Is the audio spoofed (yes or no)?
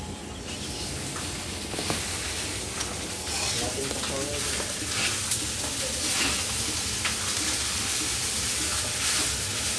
no